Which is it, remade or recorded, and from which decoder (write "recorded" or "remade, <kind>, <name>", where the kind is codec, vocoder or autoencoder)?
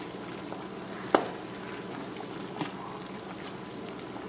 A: recorded